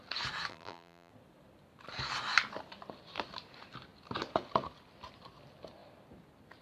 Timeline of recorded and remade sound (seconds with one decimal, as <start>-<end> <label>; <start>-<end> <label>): 0.0-0.5 recorded; 0.5-1.1 remade; 1.1-6.6 recorded